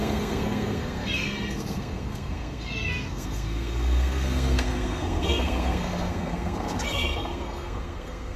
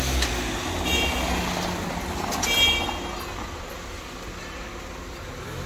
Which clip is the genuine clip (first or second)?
second